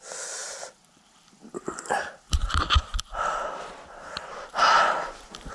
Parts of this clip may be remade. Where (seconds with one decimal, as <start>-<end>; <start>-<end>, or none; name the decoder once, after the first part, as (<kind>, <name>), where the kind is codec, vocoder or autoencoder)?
0.4-3.0 (vocoder, BigVGAN v2)